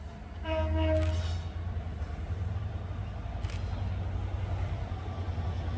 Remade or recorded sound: recorded